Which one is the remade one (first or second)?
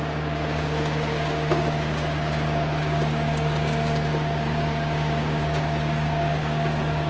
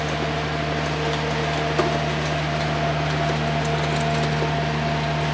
first